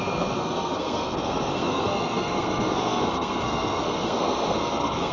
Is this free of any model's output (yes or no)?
no